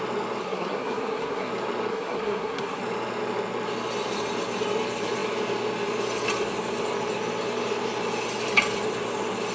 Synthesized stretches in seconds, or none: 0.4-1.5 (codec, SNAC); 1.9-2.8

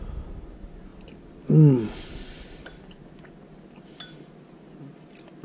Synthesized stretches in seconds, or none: none

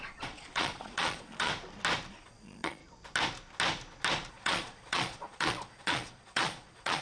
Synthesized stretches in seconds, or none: 0.0-1.5 (vocoder, Vocos); 2.1-2.8; 4.3-7.0

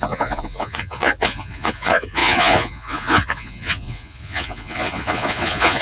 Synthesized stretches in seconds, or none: 0.0-5.8 (vocoder, Vocos)